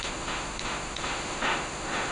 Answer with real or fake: fake